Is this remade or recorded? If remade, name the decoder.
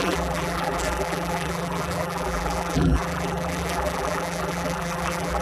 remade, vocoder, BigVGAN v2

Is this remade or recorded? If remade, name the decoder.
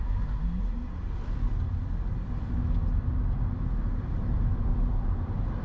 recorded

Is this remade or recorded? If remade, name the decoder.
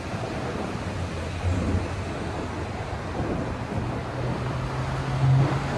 recorded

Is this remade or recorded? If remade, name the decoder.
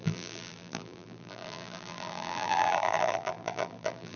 remade, vocoder, BigVGAN v2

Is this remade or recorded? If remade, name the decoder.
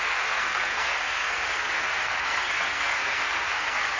remade, codec, SNAC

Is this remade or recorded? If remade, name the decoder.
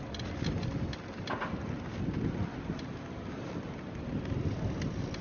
recorded